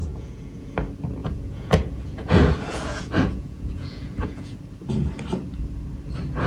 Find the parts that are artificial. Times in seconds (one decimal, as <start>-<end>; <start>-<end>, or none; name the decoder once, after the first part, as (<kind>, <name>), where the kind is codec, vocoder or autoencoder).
0.0-0.7 (vocoder, Vocos); 1.2-4.6